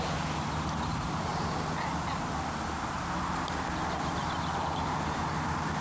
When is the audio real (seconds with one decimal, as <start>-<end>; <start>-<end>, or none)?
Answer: 0.0-5.8

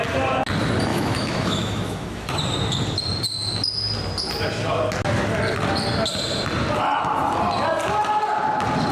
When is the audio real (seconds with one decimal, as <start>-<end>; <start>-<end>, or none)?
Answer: 0.0-0.9; 2.4-8.9